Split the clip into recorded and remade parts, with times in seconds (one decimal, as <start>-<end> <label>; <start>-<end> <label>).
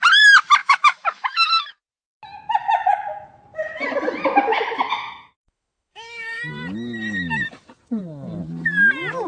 0.0-0.6 recorded; 0.6-1.5 remade; 1.5-2.6 recorded; 2.6-3.4 remade; 3.4-4.5 recorded; 4.5-6.4 remade; 6.4-9.3 recorded